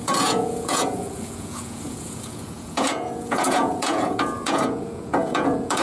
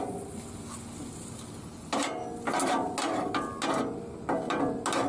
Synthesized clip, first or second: first